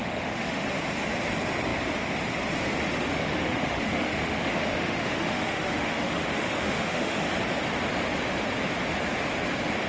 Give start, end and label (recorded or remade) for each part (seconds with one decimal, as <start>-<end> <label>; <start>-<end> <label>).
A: 0.0-0.6 remade; 0.6-3.0 recorded; 3.0-7.3 remade; 7.3-9.9 recorded